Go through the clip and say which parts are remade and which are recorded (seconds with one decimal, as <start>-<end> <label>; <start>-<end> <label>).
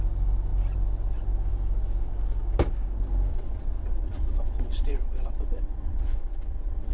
0.0-3.3 recorded; 3.3-6.9 remade